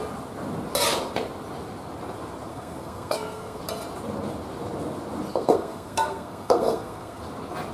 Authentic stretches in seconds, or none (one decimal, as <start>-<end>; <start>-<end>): 0.0-2.5; 3.6-5.3; 7.2-7.7